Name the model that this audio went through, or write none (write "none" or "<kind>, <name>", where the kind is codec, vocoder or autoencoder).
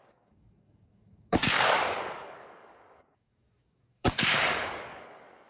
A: codec, DAC